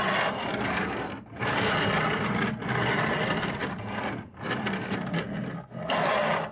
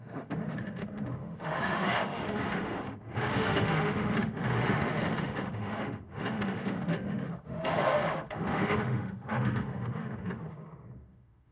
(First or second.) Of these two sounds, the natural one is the first